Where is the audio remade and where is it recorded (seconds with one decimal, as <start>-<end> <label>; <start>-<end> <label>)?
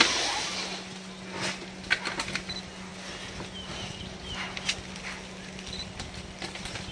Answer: 0.0-6.9 recorded